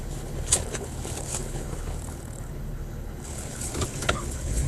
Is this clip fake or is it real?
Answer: fake